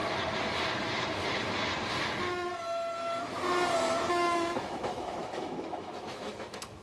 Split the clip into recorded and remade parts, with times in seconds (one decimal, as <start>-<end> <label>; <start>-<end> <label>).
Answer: 0.0-4.1 recorded; 4.1-6.8 remade